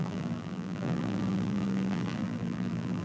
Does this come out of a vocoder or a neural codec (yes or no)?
yes